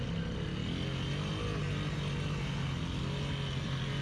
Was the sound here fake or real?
real